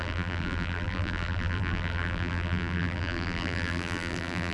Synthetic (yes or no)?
yes